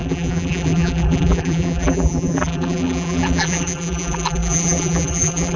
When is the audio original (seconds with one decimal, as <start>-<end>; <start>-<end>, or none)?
none